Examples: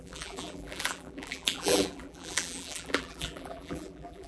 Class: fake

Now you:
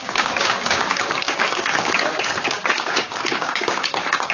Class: fake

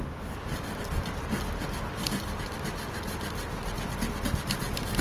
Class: real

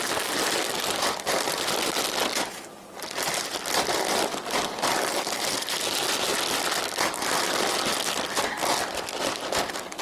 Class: real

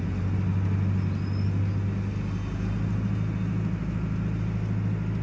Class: real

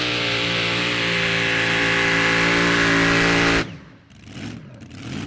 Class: real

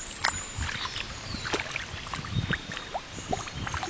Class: real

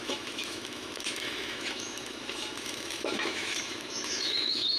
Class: fake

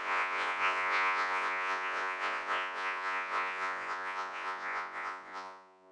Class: fake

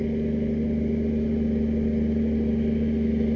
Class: real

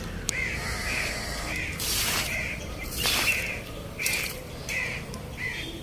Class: fake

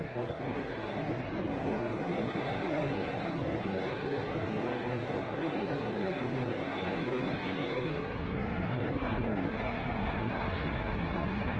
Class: fake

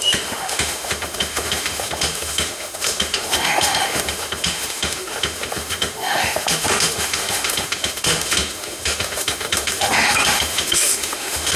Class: fake